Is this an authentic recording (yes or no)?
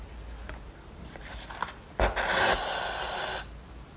yes